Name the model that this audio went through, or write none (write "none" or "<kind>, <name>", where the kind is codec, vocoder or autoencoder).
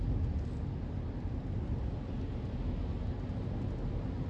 none